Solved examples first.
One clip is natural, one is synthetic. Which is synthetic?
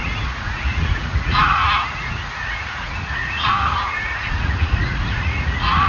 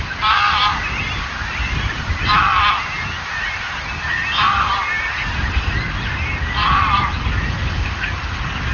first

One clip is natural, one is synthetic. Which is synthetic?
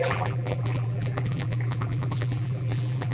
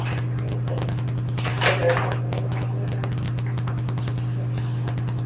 first